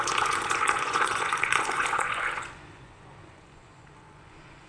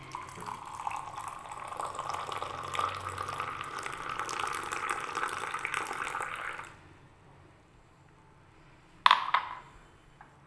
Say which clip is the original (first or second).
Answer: second